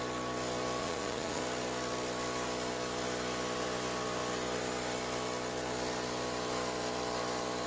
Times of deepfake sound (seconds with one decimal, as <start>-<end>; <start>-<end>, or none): 0.8-1.4